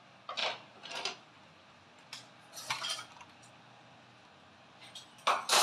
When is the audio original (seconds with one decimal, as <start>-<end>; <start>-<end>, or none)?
0.0-5.6